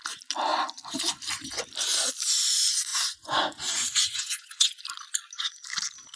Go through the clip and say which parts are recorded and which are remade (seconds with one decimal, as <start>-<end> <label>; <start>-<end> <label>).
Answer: 0.0-2.9 recorded; 2.9-4.8 remade; 4.8-6.2 recorded